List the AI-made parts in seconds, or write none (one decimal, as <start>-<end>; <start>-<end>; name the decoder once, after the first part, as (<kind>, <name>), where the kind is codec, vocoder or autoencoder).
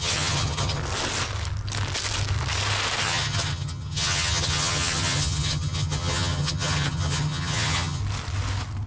0.0-0.8 (vocoder, HiFi-GAN); 3.0-8.0